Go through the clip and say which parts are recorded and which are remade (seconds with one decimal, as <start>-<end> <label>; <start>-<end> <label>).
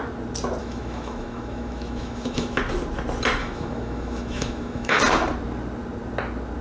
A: 0.0-0.6 recorded; 0.6-2.6 remade; 2.6-3.4 recorded; 3.4-5.0 remade; 5.0-6.6 recorded